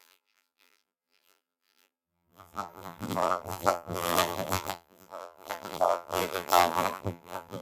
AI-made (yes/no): yes